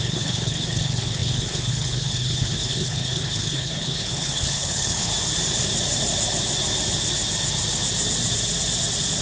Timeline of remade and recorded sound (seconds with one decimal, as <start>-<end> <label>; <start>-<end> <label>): 0.0-5.1 remade; 5.1-9.2 recorded